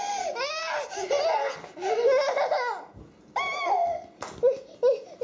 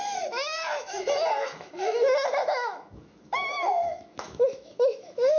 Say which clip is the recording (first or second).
first